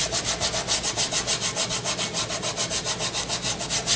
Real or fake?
real